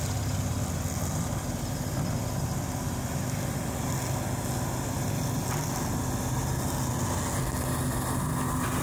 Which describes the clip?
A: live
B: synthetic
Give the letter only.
A